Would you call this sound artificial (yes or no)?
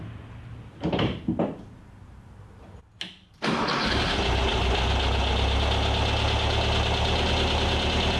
no